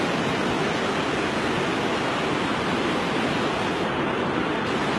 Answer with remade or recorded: recorded